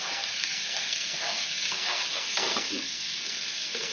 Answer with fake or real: fake